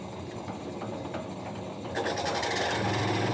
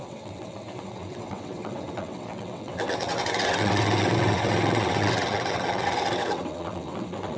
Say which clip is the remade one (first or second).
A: second